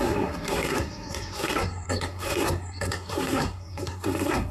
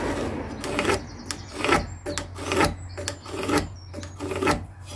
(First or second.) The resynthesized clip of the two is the first